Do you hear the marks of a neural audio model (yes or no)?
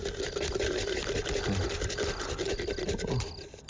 no